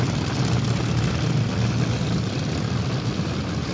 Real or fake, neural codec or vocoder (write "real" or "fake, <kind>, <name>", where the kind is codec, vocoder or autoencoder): real